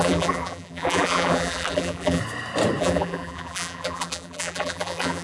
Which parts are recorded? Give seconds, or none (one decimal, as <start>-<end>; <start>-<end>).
2.2-2.8